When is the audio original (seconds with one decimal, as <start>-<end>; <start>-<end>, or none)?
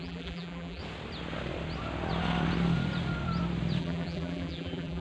0.8-3.8